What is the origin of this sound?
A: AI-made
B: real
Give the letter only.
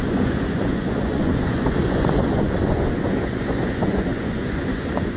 A